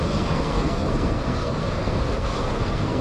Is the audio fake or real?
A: fake